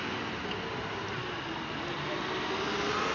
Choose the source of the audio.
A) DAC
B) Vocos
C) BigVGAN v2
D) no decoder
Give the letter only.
D